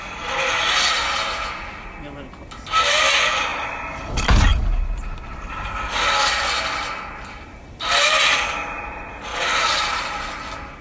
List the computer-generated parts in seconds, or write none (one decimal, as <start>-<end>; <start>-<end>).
4.5-5.7